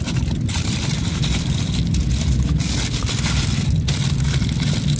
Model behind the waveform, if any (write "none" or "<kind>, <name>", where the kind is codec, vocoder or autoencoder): vocoder, BigVGAN v2